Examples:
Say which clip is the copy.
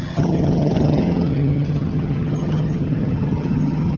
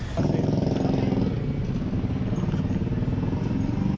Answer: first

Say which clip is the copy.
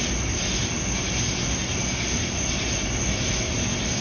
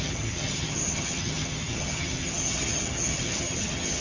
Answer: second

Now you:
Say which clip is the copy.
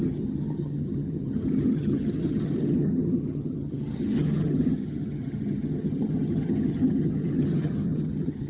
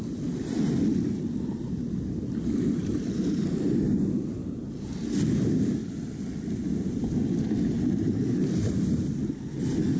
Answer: first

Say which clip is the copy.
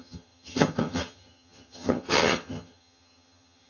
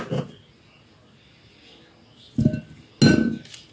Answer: first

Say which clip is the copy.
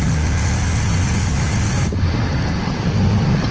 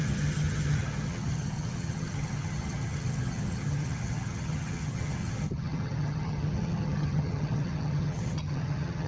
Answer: second